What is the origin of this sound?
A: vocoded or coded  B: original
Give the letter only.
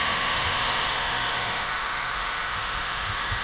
A